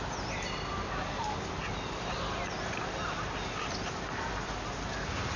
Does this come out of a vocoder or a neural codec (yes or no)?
no